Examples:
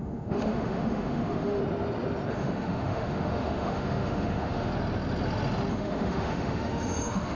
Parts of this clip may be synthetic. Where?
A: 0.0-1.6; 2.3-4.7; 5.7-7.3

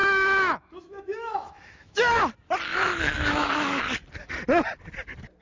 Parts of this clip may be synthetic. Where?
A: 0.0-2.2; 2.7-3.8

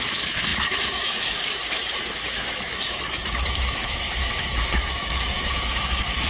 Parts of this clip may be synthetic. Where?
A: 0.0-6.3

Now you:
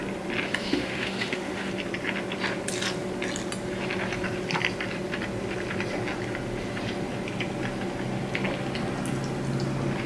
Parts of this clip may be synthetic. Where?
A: 0.6-1.7